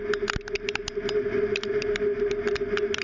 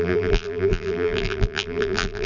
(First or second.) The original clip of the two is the first